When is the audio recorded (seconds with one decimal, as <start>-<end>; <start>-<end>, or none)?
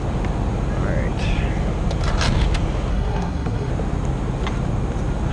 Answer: 0.0-2.9; 3.7-5.3